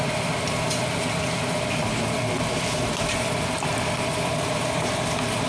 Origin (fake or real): fake